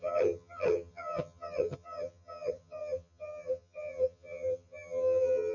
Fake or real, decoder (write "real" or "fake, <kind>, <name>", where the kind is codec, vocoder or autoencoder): fake, vocoder, HiFi-GAN